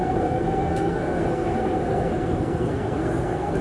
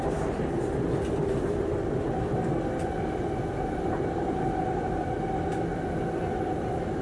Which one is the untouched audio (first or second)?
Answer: second